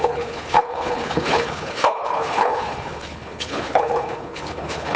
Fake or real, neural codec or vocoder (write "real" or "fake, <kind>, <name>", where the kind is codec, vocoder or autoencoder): fake, codec, HILCodec